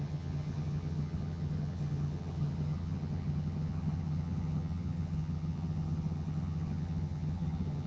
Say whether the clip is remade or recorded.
remade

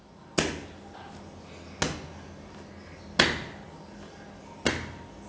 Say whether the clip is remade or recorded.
recorded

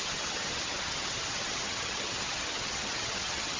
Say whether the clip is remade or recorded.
remade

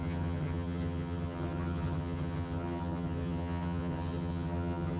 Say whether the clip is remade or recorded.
remade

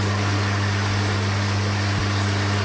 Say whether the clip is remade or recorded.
recorded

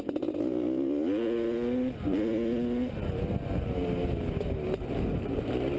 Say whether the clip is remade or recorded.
recorded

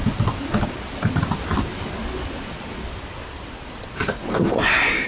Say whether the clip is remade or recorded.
recorded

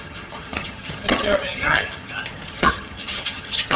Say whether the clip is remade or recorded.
remade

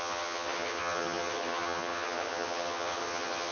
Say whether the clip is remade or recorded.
remade